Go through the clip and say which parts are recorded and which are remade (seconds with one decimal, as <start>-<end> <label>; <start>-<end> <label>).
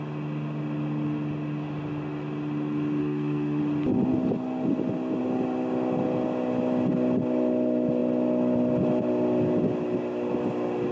0.0-3.0 recorded; 3.0-3.6 remade; 3.6-10.9 recorded